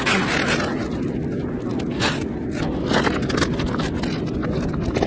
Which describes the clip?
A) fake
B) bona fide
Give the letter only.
B